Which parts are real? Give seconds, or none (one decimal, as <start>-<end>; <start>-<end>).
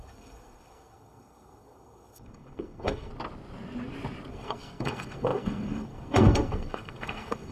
3.1-4.3